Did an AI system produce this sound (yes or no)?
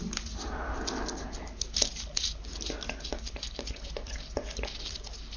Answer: no